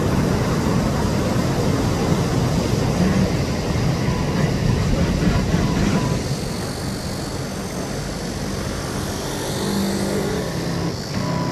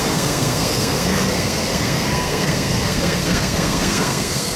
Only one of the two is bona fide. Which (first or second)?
first